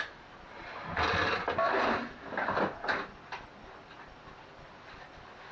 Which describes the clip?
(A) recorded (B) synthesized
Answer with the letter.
A